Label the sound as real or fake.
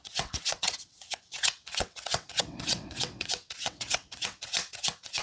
fake